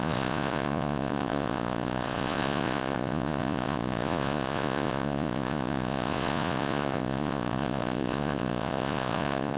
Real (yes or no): no